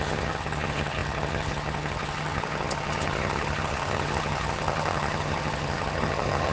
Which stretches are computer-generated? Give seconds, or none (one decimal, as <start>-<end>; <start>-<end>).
0.0-6.5